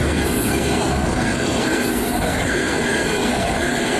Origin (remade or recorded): remade